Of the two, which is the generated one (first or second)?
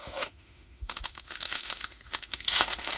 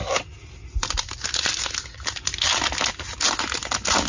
first